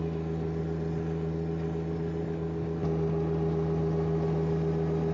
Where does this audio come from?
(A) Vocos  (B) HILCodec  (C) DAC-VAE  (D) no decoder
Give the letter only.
D